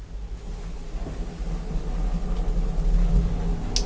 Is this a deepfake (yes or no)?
no